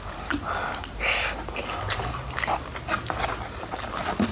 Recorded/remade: recorded